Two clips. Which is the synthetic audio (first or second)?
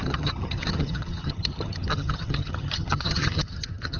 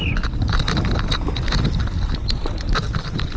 first